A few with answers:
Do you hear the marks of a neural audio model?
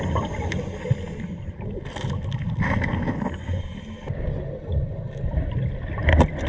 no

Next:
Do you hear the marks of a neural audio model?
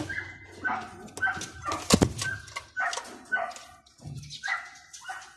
no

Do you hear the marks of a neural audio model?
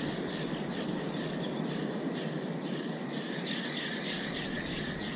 no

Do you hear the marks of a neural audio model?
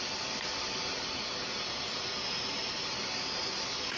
no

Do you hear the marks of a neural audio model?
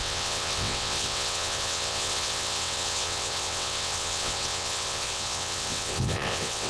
yes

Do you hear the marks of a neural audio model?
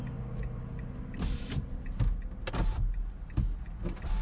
no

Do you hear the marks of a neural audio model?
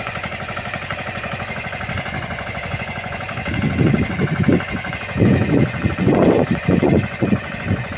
yes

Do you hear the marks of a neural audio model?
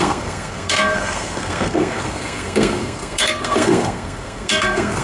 yes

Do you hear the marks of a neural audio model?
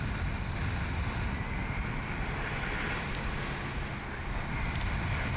no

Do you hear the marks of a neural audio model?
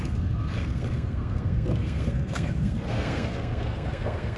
yes